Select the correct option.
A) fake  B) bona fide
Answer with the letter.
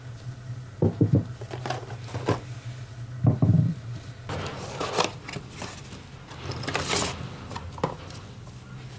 B